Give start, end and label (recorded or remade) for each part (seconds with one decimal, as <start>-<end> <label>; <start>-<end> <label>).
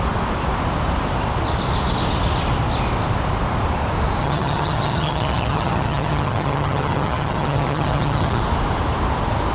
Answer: 0.0-4.2 recorded; 4.2-8.4 remade; 8.4-9.5 recorded